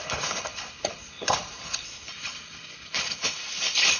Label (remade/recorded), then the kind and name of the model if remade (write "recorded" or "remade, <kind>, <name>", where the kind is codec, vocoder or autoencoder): remade, codec, HILCodec